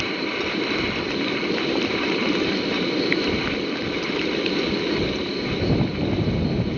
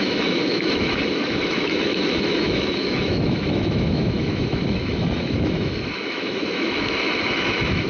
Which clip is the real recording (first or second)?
first